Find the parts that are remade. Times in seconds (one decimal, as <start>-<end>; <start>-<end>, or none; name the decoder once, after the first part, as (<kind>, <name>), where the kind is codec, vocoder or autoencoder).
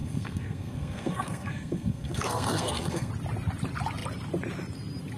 0.0-3.1 (codec, SNAC)